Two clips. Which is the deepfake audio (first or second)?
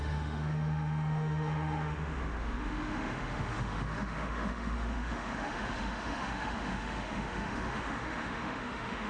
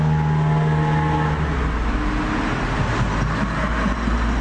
first